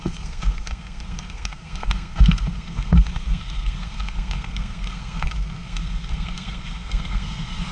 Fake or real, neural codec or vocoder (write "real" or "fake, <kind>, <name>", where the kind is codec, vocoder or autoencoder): fake, codec, SNAC